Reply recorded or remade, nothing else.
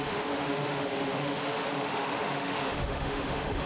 remade